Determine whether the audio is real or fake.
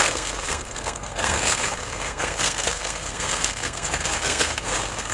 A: fake